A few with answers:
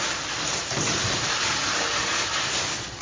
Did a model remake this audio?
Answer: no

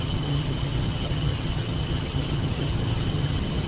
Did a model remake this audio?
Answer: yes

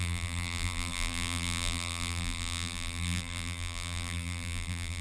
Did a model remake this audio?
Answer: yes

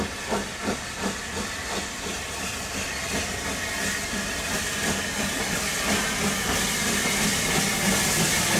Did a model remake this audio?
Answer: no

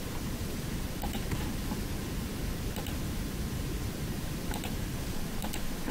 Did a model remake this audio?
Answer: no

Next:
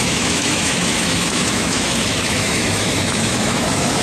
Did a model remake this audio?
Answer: yes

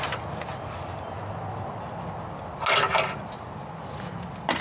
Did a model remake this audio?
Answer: no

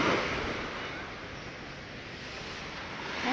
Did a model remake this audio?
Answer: no